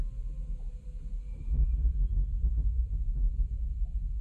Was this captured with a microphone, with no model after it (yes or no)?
yes